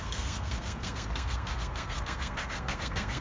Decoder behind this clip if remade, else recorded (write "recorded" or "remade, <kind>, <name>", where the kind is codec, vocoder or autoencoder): remade, codec, SNAC